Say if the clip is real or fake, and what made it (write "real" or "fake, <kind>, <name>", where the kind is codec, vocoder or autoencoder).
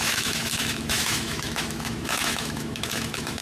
fake, autoencoder, DAC-VAE